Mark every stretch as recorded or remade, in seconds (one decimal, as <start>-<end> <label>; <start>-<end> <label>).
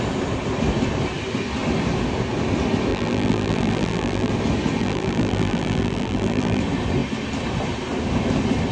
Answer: 0.0-2.9 recorded; 2.9-4.3 remade; 4.3-4.8 recorded; 4.8-6.6 remade; 6.6-8.7 recorded